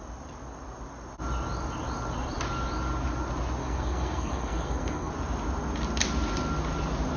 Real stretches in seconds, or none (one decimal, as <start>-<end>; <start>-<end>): 0.0-3.6; 5.1-7.2